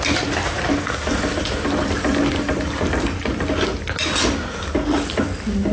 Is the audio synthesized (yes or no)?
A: no